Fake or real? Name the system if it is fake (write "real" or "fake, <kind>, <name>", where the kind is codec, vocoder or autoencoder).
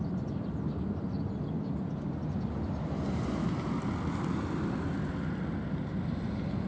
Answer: real